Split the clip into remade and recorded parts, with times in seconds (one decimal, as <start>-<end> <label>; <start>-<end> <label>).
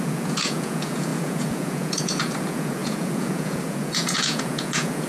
0.0-5.1 remade